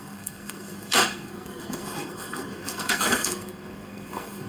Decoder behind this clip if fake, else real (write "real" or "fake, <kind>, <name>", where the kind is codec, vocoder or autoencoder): fake, codec, SNAC